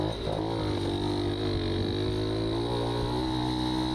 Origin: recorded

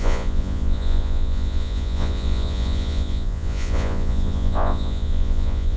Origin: remade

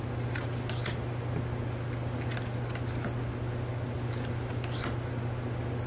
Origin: recorded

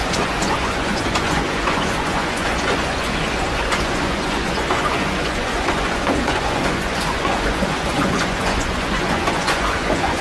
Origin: remade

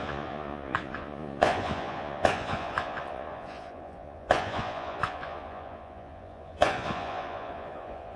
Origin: remade